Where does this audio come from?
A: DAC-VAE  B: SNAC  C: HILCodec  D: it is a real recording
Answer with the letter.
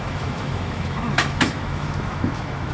A